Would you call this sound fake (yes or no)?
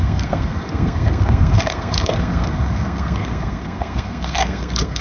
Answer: yes